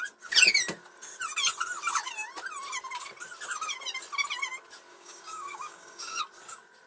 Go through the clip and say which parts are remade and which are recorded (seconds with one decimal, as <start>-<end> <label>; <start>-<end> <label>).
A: 0.0-4.9 recorded; 4.9-6.2 remade; 6.2-6.9 recorded